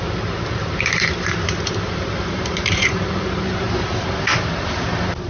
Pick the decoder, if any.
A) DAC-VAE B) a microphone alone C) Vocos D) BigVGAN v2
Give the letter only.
D